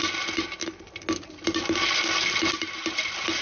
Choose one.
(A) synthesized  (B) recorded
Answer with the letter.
B